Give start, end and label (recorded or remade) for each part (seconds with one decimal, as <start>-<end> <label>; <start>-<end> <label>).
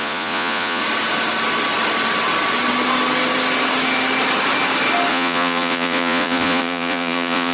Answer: 0.0-0.8 remade; 0.8-5.1 recorded; 5.1-7.5 remade